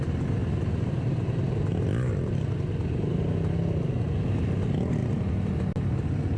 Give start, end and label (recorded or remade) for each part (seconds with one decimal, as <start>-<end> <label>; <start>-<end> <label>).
0.0-6.4 recorded